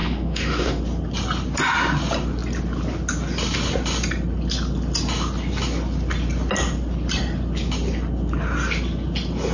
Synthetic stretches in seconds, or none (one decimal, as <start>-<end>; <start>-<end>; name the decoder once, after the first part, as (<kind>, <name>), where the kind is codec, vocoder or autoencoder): 0.0-0.8 (autoencoder, DAC-VAE)